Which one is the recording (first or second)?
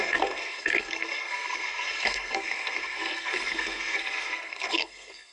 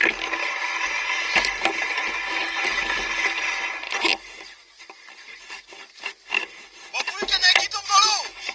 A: second